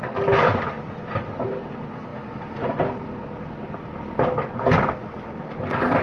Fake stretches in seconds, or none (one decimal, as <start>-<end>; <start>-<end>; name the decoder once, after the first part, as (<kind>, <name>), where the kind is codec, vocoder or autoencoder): none